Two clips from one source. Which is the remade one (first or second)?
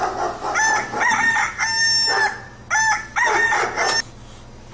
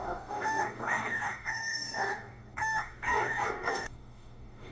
second